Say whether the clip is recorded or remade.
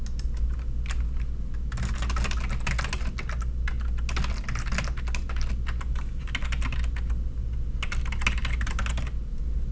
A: recorded